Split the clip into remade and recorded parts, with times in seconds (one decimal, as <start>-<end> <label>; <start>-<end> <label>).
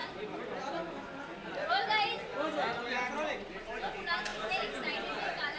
0.0-0.6 remade; 0.6-4.3 recorded; 4.3-5.6 remade